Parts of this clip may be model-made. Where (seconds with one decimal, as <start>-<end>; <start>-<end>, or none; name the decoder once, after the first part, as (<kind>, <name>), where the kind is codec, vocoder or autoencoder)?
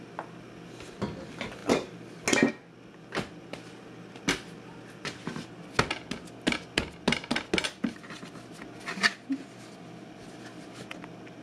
none